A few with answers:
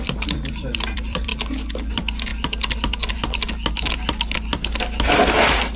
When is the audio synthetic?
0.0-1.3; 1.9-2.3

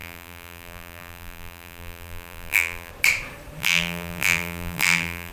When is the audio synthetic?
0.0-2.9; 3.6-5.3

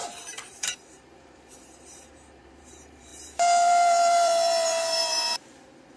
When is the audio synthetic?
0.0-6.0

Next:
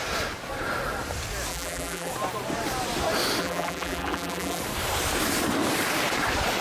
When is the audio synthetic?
1.5-2.1; 3.4-4.6